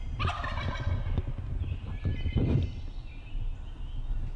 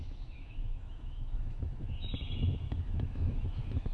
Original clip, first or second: first